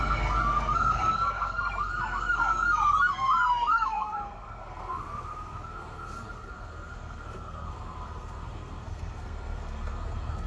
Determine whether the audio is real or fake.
fake